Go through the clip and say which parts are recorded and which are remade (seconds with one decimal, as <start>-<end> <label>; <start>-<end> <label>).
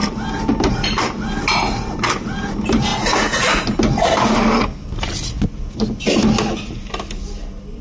0.0-7.8 recorded